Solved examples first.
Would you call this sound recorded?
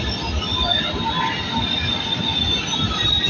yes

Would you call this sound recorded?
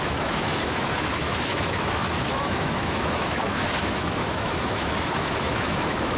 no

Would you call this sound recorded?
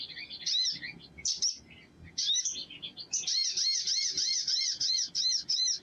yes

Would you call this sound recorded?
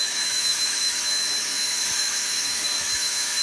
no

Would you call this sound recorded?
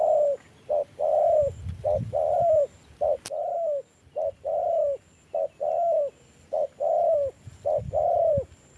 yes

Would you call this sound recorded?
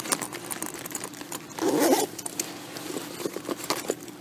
yes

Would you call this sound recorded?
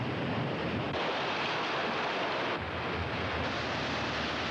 yes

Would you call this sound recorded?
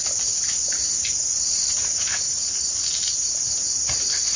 yes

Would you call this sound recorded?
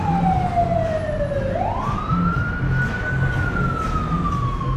yes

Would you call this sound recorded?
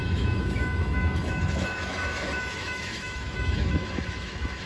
no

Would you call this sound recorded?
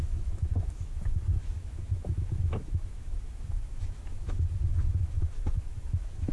no